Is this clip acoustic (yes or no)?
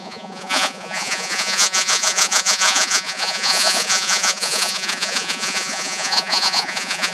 no